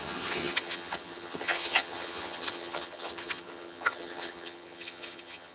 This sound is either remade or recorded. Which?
remade